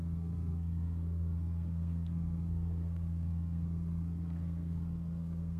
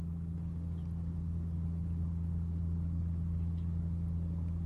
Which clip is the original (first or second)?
second